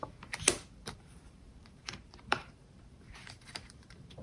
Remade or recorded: remade